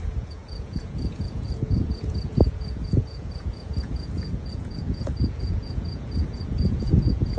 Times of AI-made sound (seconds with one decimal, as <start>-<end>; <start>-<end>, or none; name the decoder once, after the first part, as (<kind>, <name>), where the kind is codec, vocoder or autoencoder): 0.0-7.4 (vocoder, Vocos)